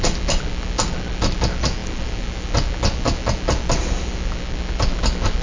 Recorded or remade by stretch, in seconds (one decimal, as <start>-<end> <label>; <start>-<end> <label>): 0.0-5.4 recorded